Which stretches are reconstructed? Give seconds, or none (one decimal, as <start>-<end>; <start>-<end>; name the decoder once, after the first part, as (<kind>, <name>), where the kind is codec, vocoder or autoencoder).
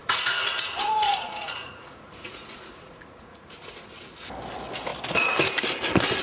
0.0-3.7 (vocoder, Vocos)